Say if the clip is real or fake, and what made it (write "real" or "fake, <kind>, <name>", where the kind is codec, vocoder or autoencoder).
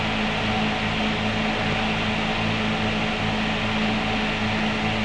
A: real